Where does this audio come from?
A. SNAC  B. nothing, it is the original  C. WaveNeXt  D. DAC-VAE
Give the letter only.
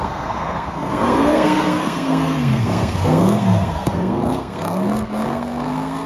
A